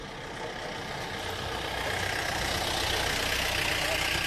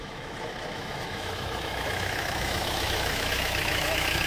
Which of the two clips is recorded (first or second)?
first